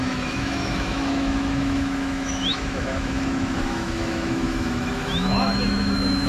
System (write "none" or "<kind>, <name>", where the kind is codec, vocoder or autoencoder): autoencoder, DAC-VAE